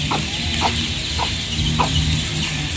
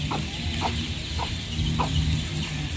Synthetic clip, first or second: second